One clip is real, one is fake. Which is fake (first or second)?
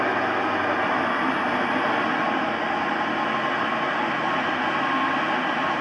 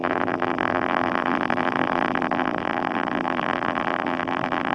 second